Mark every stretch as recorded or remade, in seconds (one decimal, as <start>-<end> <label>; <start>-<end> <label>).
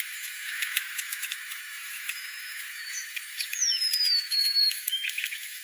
0.0-5.6 remade